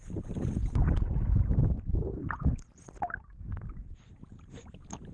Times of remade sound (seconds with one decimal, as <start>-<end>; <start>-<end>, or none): 0.6-2.4